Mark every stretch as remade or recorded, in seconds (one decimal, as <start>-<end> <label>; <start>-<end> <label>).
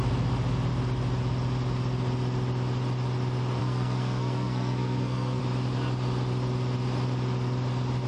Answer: 0.0-3.6 recorded; 3.6-5.4 remade; 5.4-8.1 recorded